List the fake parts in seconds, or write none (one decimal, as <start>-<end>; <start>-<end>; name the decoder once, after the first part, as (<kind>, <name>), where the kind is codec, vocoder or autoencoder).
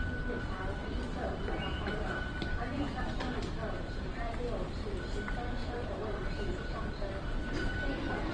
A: 0.8-4.4 (vocoder, BigVGAN v2); 5.6-7.1